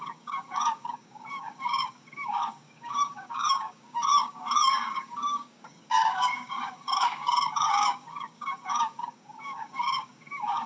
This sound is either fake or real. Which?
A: fake